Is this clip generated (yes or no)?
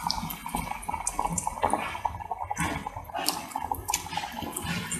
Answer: no